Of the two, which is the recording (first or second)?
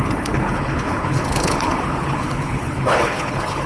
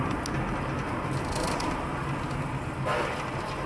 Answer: second